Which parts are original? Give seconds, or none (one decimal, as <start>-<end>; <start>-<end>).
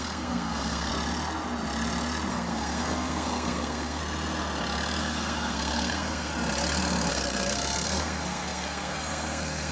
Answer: 0.9-2.3; 4.0-5.0; 6.3-7.1